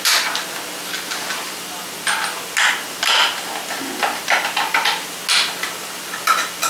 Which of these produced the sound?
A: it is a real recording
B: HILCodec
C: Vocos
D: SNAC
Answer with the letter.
A